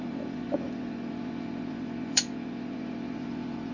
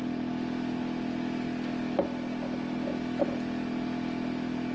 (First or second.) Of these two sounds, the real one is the second